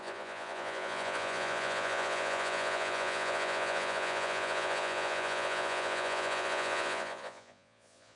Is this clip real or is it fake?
fake